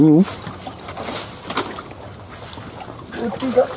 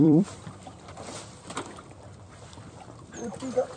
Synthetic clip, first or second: second